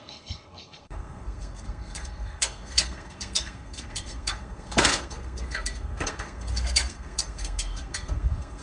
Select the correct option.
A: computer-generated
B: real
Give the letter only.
A